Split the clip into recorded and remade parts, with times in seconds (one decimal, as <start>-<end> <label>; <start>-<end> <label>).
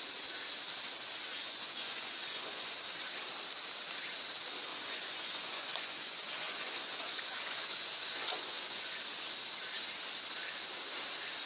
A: 0.0-1.3 recorded; 1.3-2.7 remade; 2.7-4.7 recorded; 4.7-9.0 remade; 9.0-11.5 recorded